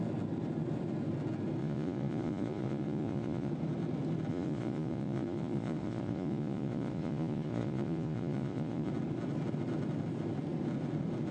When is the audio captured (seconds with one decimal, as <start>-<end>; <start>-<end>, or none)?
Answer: 0.0-1.6; 3.5-4.3; 8.9-11.3